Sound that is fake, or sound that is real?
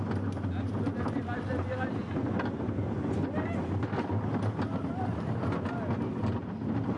real